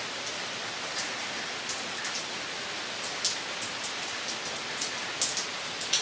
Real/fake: real